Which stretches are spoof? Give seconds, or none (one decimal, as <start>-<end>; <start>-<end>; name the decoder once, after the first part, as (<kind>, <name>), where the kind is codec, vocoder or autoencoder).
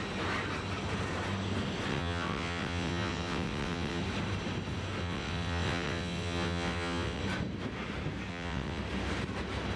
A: 1.9-4.0 (vocoder, WaveNeXt); 5.0-7.2; 8.3-8.8